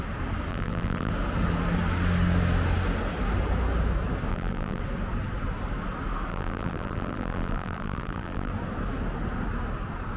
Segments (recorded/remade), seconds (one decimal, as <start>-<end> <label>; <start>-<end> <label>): 0.0-0.5 recorded; 0.5-1.1 remade; 1.1-4.3 recorded; 4.3-4.8 remade; 4.8-6.3 recorded; 6.3-8.5 remade; 8.5-10.2 recorded